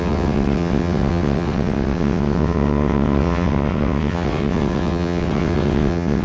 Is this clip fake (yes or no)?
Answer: yes